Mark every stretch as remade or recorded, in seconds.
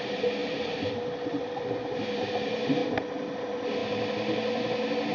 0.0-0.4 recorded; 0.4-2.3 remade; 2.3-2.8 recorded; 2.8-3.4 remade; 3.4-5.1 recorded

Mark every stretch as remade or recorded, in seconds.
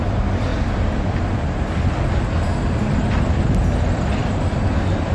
0.0-5.1 recorded